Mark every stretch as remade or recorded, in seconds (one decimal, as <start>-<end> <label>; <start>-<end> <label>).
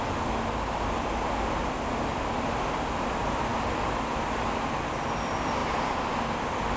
0.0-6.8 recorded